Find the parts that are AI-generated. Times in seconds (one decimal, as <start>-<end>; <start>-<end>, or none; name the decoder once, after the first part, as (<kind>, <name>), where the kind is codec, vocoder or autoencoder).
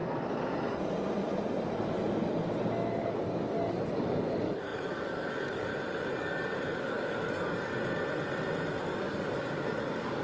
2.9-5.7 (codec, DAC); 6.2-7.7; 8.8-10.2